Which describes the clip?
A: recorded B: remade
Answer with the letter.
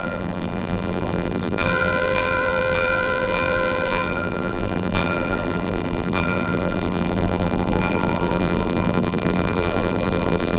B